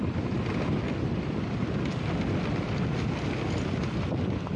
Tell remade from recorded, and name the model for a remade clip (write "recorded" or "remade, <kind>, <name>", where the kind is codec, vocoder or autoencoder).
recorded